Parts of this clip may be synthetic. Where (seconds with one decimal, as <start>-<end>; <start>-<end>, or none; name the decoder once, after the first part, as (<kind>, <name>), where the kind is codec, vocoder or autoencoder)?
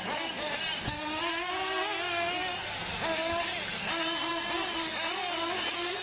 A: none